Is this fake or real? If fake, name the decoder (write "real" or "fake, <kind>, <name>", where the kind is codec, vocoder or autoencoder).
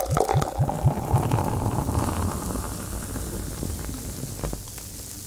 real